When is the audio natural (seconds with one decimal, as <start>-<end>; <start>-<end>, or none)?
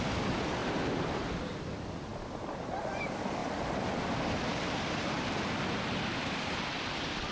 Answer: 0.6-1.6; 2.1-3.0; 3.4-4.4